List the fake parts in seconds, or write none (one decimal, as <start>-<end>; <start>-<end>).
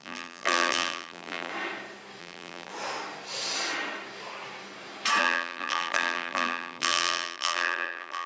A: 0.0-1.5; 2.2-2.7; 5.2-8.3